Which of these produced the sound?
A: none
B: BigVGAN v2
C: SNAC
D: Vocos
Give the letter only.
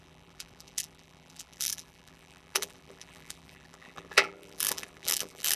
B